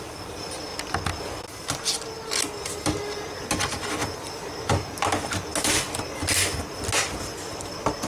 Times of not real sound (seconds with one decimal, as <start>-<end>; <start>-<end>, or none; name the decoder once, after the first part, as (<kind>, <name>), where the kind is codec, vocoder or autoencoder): none